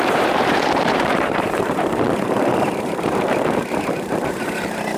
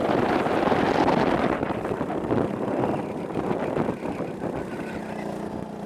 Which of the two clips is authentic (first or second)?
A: second